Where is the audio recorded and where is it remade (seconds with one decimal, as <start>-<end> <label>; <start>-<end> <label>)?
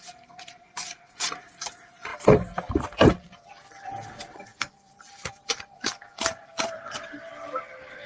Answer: 0.0-2.1 recorded; 2.1-3.4 remade; 3.4-4.5 recorded; 4.5-7.3 remade; 7.3-8.1 recorded